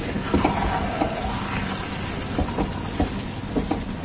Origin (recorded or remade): recorded